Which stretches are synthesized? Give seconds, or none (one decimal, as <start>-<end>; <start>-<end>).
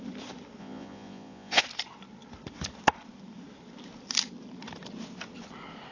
0.6-1.6